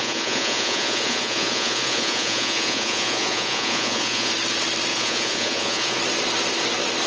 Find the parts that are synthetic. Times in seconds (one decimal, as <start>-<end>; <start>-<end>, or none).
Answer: 0.0-4.3; 4.9-6.0